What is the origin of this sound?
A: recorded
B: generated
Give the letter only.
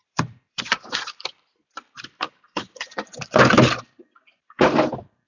B